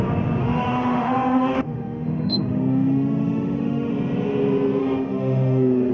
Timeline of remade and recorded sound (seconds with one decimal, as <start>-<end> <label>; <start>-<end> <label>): 0.0-0.4 recorded; 0.4-3.9 remade; 3.9-4.8 recorded; 4.8-5.9 remade